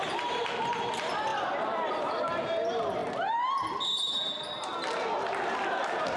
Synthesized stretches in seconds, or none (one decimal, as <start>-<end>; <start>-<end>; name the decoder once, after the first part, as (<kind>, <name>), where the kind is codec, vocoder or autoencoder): 0.0-3.0 (vocoder, BigVGAN v2)